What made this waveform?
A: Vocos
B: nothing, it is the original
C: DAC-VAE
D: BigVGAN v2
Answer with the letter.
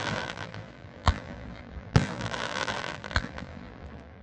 D